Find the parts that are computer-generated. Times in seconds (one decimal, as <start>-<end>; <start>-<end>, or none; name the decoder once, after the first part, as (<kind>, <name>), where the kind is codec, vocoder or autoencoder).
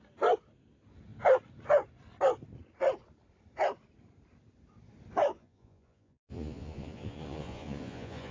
5.3-8.3 (vocoder, Vocos)